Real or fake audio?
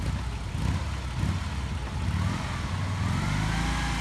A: real